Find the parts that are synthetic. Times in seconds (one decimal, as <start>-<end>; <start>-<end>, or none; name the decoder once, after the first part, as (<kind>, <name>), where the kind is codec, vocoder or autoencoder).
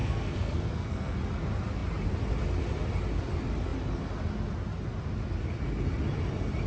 0.0-1.2 (codec, SNAC)